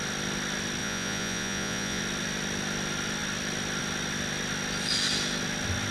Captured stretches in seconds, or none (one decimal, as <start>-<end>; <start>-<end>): 0.0-0.8; 2.0-5.9